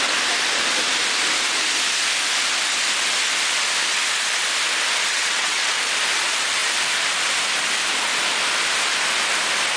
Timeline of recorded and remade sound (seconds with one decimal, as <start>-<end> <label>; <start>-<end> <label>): 0.0-5.1 recorded; 5.1-5.7 remade; 5.7-9.8 recorded